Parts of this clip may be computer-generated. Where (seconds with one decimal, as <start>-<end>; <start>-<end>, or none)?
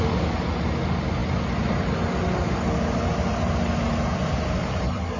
none